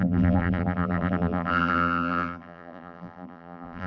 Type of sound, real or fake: fake